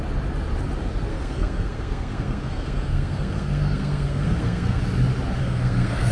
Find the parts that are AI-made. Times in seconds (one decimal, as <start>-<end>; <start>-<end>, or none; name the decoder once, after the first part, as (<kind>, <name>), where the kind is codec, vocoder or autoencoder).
1.1-4.8 (codec, SNAC); 5.4-6.1